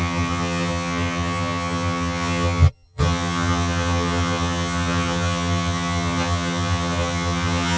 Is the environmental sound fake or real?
fake